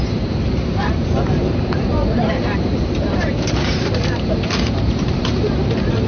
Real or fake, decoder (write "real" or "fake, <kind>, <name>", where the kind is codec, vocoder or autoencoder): fake, vocoder, BigVGAN v2